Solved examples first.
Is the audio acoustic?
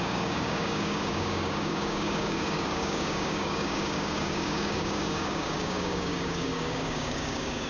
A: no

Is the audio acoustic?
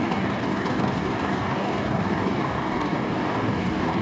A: no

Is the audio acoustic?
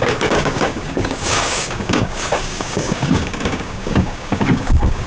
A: no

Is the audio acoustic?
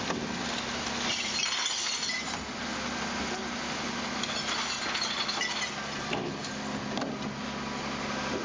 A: yes